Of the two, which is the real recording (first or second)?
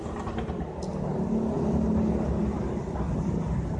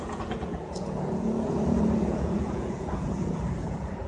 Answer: first